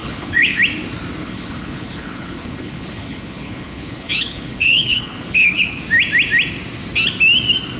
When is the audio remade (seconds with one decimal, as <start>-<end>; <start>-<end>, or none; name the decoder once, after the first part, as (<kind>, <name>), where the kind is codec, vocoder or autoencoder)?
0.0-0.6 (codec, HILCodec); 1.2-5.8